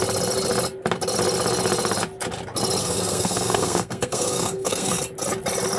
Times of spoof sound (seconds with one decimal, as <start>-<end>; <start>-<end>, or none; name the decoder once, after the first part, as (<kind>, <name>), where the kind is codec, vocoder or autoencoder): 2.8-5.0 (codec, SNAC)